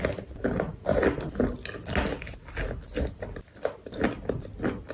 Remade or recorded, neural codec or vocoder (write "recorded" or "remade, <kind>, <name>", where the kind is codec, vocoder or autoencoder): recorded